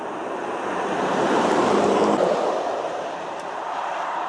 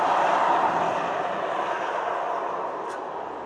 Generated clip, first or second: first